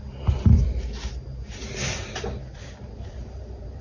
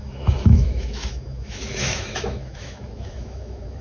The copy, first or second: second